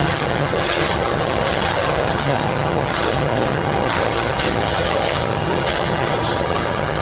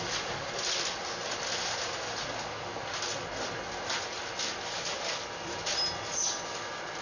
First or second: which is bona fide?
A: second